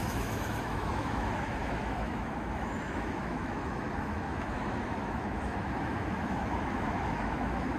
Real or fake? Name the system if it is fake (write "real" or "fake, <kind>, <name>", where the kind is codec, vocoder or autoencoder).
fake, autoencoder, DAC-VAE